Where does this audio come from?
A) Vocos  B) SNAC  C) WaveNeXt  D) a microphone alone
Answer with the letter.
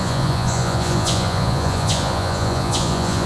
A